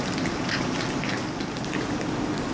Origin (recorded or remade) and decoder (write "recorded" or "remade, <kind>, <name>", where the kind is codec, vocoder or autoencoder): recorded